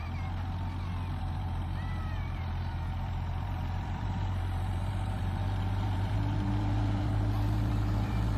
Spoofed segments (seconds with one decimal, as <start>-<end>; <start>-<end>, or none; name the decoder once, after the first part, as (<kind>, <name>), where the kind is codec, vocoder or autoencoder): 1.2-8.4 (vocoder, BigVGAN v2)